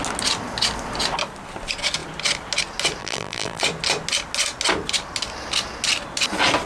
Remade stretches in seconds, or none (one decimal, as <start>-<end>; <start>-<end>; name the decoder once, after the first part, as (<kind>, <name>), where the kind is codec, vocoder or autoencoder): 3.0-3.6 (vocoder, BigVGAN v2)